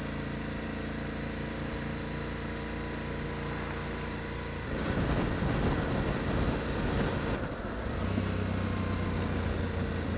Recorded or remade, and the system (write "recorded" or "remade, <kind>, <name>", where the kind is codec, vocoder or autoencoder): recorded